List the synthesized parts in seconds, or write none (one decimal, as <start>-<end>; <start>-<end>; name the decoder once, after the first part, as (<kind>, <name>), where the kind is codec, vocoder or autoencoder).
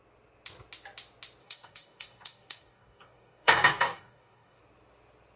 1.4-4.6 (codec, DAC)